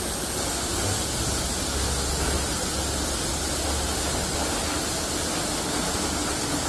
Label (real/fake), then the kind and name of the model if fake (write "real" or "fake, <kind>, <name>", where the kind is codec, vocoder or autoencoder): real